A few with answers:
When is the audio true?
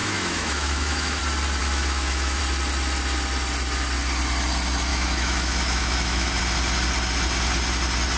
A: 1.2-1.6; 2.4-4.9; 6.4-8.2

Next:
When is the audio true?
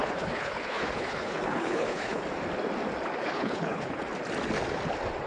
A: 2.2-3.2; 4.0-5.3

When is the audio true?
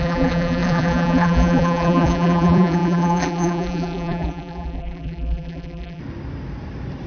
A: 6.0-7.1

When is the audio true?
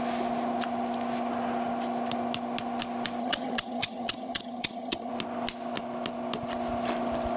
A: 0.0-3.2; 5.1-7.4